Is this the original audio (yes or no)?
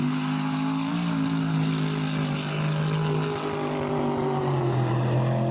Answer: yes